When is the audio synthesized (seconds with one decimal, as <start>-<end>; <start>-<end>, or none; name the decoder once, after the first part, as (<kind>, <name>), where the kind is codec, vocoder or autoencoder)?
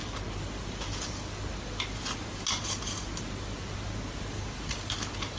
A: none